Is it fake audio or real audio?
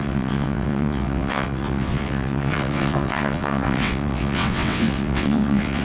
fake